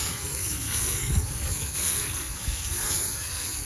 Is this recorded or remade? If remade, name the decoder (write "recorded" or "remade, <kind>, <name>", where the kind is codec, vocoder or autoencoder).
remade, codec, SNAC